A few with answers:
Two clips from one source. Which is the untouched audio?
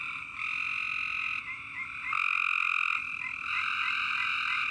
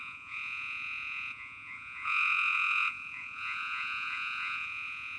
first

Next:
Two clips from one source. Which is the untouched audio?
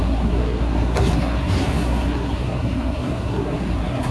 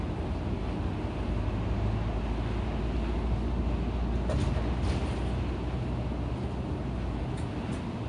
second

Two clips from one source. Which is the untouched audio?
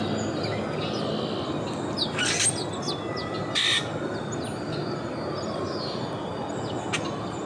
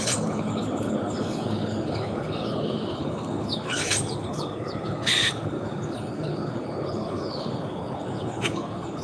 first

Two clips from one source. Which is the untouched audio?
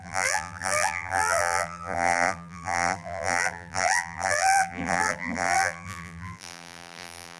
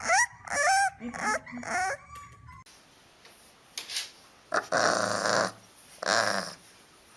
second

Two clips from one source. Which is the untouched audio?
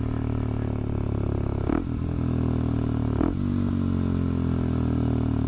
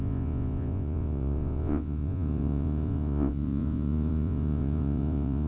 first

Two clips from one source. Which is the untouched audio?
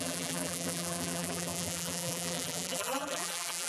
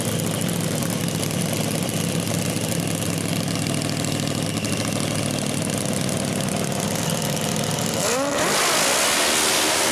second